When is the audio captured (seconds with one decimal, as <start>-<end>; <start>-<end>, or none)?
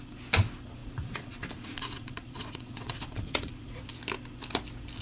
0.0-0.8; 3.8-5.0